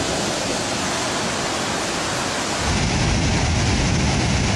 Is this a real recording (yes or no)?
yes